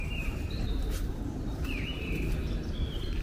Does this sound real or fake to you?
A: fake